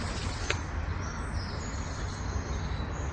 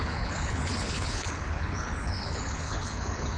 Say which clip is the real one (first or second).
first